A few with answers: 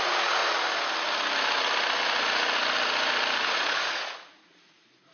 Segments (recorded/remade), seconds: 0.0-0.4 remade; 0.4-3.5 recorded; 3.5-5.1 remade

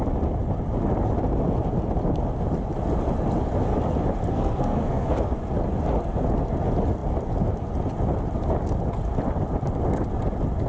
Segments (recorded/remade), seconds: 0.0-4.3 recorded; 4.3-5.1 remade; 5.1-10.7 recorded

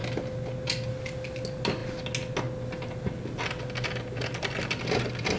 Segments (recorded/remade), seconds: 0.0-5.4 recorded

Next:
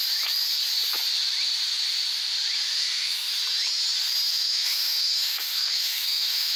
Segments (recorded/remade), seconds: 0.0-2.7 recorded; 2.7-3.3 remade; 3.3-4.3 recorded; 4.3-6.6 remade

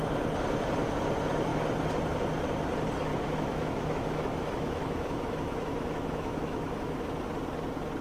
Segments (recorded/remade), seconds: 0.0-3.1 recorded; 3.1-7.1 remade; 7.1-8.0 recorded